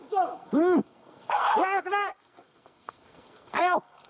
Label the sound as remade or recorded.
remade